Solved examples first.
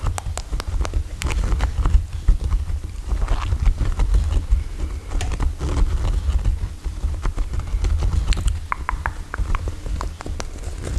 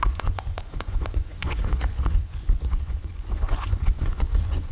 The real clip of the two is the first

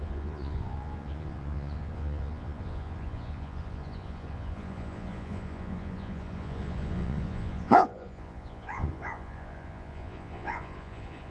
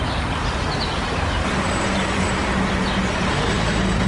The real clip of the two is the second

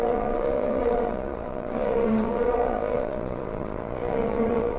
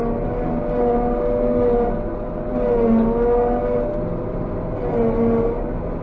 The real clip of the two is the second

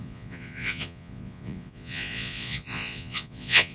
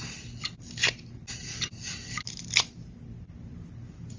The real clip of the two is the second